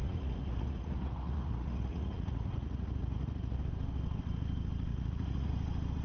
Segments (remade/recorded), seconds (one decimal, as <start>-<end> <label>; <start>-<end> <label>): 0.0-3.6 remade; 3.6-4.9 recorded; 4.9-5.5 remade; 5.5-6.0 recorded